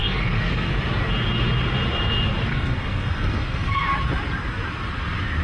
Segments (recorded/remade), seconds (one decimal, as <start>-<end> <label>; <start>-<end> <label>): 0.0-0.7 remade; 0.7-2.5 recorded; 2.5-3.8 remade; 3.8-5.4 recorded